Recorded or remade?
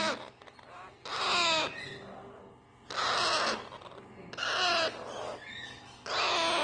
recorded